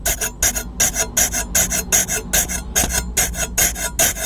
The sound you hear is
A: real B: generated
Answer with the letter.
A